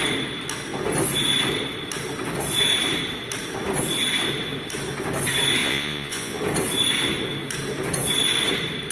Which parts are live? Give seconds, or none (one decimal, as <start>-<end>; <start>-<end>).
0.0-5.6; 6.4-8.9